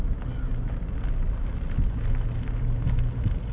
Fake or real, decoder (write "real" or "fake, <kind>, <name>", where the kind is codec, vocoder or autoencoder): real